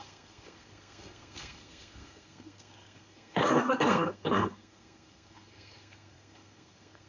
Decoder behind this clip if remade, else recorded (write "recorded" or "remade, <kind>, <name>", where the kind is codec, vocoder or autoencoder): remade, codec, SNAC